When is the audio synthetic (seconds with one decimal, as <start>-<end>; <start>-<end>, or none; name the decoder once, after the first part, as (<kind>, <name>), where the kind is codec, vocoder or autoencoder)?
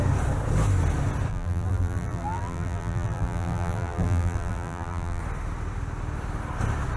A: 1.3-5.2 (vocoder, BigVGAN v2)